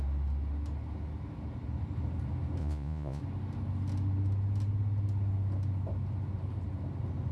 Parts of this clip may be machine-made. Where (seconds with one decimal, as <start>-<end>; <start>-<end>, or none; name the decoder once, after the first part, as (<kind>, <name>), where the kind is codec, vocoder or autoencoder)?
2.6-3.2 (vocoder, Vocos)

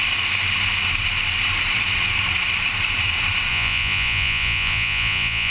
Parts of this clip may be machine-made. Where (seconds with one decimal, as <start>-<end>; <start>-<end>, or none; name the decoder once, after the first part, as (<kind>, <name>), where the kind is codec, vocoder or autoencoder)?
3.5-5.5 (vocoder, Vocos)

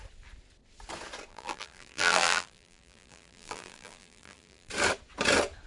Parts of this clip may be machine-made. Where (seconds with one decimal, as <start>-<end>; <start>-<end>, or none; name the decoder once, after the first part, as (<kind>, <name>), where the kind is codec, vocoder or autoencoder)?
1.3-4.7 (vocoder, BigVGAN v2)

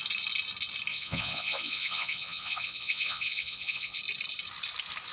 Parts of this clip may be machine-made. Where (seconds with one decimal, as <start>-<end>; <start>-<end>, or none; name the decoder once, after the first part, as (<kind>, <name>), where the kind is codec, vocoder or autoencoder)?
0.9-4.0 (vocoder, Vocos)